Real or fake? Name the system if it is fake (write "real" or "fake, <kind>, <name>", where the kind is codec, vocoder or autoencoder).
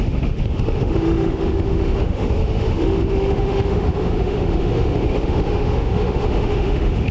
fake, autoencoder, DAC-VAE